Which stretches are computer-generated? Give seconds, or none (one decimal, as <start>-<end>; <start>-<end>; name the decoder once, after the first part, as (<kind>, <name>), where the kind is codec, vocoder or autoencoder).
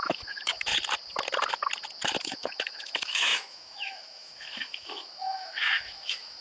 0.0-0.7 (autoencoder, DAC-VAE); 2.2-6.4